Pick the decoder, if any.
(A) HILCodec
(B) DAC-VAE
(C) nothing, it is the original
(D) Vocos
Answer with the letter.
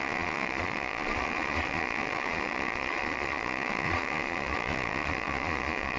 D